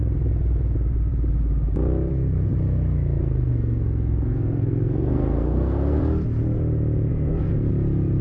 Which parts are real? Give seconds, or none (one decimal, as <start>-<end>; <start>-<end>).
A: 0.0-3.2; 6.0-7.1; 7.7-8.2